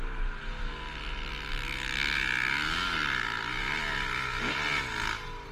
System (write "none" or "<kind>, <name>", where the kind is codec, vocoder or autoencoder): none